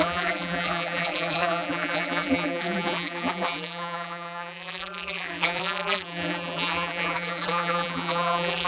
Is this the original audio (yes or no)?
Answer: no